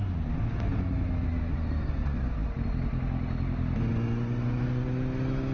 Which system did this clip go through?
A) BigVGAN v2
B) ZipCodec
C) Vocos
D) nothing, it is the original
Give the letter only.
D